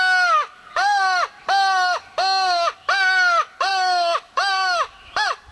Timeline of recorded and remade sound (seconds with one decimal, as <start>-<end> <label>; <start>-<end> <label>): 0.0-3.7 recorded; 3.7-5.1 remade; 5.1-5.5 recorded